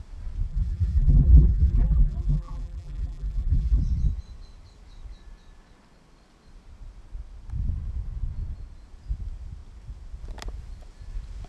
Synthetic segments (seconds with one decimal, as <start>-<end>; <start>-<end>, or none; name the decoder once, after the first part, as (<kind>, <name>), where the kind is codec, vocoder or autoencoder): 0.5-3.8 (vocoder, BigVGAN v2)